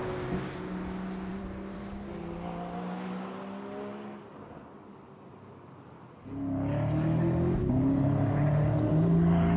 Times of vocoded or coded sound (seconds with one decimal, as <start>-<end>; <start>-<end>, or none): 1.3-1.8